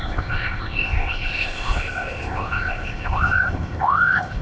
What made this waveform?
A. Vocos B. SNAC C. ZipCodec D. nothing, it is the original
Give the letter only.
C